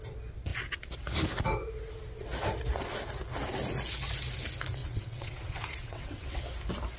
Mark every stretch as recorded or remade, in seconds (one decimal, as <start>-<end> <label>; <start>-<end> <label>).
0.0-4.8 recorded; 4.8-6.4 remade; 6.4-7.0 recorded